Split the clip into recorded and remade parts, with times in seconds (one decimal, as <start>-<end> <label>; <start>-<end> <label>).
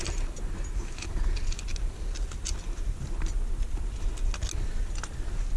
0.0-5.6 recorded